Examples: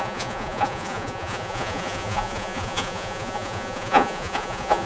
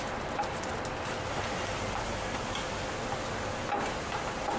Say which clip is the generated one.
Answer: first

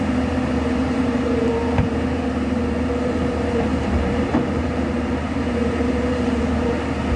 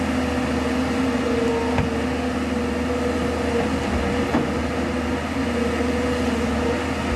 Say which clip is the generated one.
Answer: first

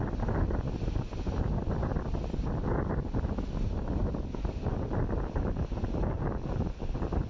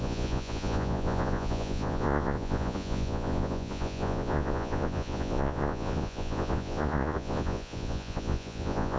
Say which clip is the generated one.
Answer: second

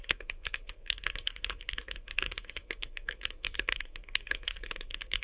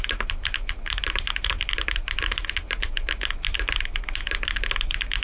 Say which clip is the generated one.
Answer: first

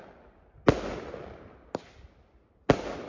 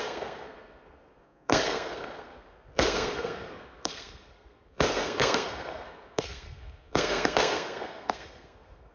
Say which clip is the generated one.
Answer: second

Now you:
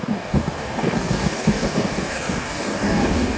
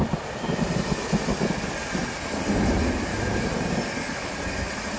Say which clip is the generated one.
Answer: first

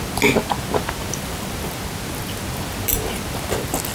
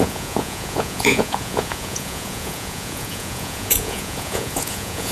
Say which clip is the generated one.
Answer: second